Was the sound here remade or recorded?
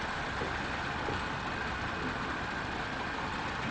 recorded